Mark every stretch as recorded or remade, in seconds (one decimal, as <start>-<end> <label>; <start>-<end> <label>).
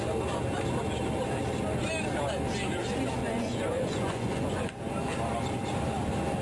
0.0-3.2 recorded; 3.2-4.8 remade; 4.8-6.4 recorded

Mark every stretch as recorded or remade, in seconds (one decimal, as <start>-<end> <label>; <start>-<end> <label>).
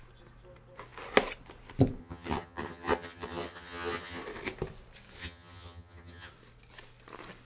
0.0-2.0 recorded; 2.0-4.2 remade; 4.2-5.2 recorded; 5.2-6.3 remade; 6.3-7.4 recorded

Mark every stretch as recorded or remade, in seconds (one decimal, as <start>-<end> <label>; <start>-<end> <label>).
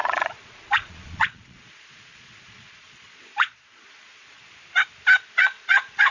0.0-4.4 remade; 4.4-5.2 recorded; 5.2-6.1 remade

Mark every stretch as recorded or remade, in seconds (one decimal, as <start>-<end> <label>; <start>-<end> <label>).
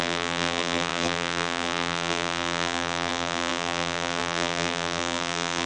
0.0-5.7 remade